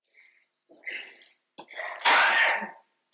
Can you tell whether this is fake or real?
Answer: real